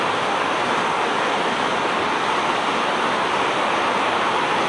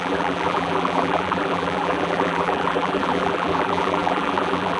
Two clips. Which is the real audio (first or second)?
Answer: first